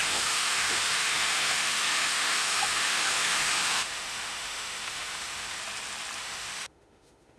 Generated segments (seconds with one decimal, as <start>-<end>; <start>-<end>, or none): 0.0-5.6; 6.2-7.4